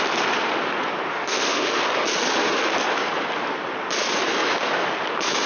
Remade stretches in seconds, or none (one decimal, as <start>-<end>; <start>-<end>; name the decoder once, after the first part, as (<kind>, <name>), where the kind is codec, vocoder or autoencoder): 1.1-1.8 (autoencoder, DAC-VAE)